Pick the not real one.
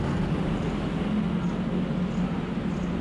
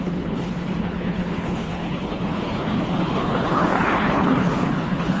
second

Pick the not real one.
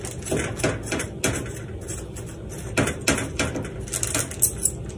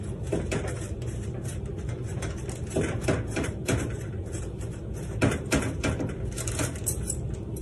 second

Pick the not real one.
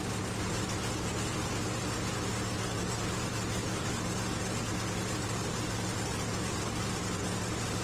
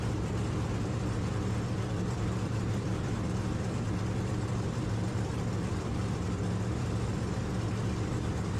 second